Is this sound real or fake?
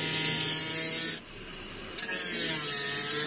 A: real